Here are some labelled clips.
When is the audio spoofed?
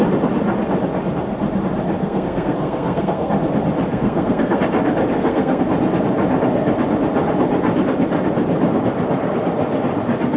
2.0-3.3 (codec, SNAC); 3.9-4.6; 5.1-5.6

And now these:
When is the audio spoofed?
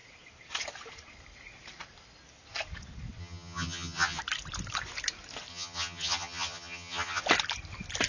3.2-4.2 (vocoder, HiFi-GAN); 5.5-7.2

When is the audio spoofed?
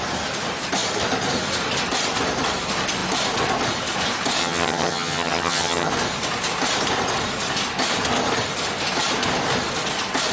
4.4-5.9 (vocoder, HiFi-GAN)